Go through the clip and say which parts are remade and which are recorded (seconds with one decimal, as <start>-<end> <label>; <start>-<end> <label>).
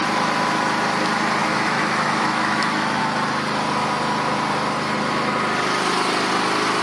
0.0-1.4 recorded; 1.4-3.0 remade; 3.0-6.8 recorded